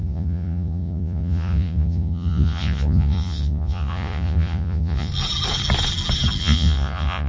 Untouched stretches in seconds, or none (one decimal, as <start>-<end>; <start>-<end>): 5.1-6.4